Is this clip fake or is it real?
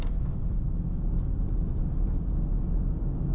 real